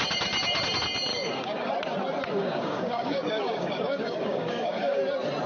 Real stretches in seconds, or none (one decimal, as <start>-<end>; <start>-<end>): 0.0-1.1; 1.7-2.4; 5.0-5.5